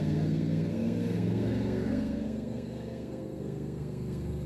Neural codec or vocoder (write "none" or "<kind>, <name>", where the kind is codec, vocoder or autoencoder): codec, SNAC